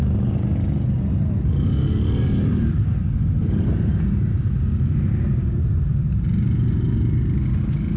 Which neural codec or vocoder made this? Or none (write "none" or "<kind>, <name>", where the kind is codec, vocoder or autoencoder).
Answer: none